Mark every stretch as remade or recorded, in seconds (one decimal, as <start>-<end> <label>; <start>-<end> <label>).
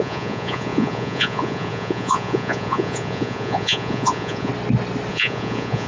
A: 0.0-4.5 remade; 4.5-5.1 recorded; 5.1-5.9 remade